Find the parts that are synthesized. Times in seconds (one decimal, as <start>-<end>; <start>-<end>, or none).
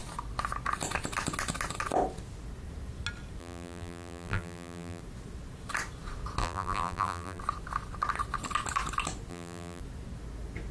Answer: 3.4-5.0; 6.4-7.4; 9.3-9.8